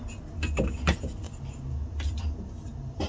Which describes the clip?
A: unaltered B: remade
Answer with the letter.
A